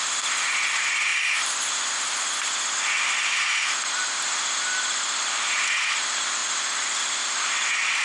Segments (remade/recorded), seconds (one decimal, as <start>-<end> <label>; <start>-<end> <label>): 0.0-8.0 recorded